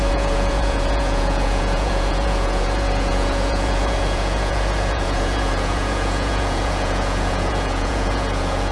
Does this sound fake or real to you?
fake